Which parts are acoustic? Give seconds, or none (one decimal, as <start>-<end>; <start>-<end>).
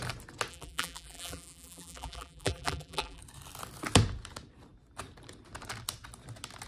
0.0-0.5; 3.2-6.7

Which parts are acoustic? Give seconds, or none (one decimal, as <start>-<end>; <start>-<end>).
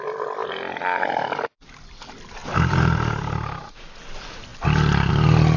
0.0-5.6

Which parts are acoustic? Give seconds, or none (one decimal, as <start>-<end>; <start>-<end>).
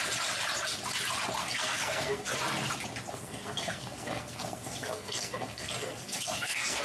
0.0-1.4; 2.3-3.1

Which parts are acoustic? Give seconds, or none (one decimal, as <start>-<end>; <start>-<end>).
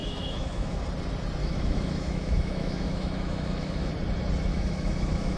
0.8-1.4; 3.9-4.5